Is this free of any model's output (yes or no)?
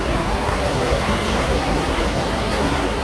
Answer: no